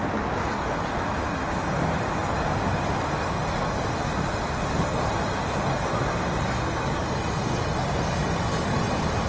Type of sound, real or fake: real